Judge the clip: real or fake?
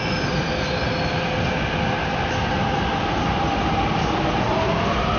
real